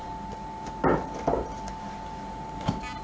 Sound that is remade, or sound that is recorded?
recorded